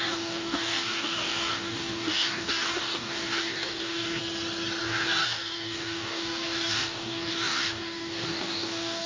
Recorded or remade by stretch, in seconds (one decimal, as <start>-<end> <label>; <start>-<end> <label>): 0.0-4.2 remade; 4.2-4.8 recorded; 4.8-9.1 remade